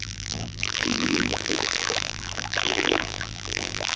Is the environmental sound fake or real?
fake